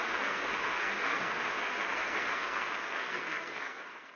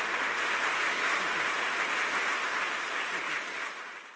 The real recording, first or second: second